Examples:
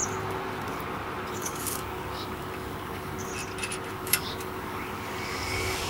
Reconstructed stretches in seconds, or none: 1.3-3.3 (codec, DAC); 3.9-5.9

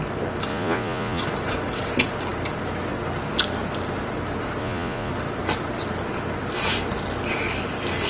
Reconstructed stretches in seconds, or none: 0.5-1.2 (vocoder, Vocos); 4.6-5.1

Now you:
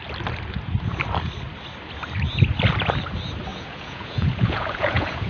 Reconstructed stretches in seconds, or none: 3.5-5.3 (vocoder, Vocos)

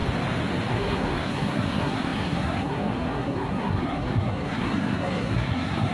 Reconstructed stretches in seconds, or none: 0.7-5.9 (codec, SNAC)

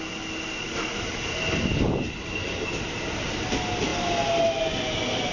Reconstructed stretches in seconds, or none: 1.6-2.2 (vocoder, BigVGAN v2)

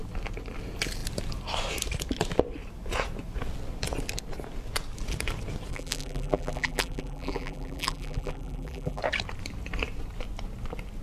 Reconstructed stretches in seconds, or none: 5.7-9.0 (vocoder, BigVGAN v2)

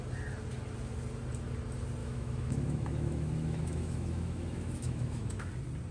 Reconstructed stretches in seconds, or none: 2.0-5.5 (autoencoder, DAC-VAE)